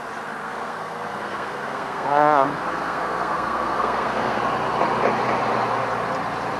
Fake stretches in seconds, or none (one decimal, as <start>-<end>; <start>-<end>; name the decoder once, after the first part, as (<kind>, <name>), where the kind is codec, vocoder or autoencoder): 0.4-4.4 (codec, SNAC)